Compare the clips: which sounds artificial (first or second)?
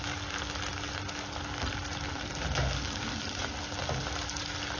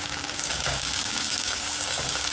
second